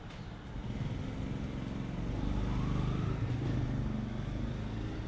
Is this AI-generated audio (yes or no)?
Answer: no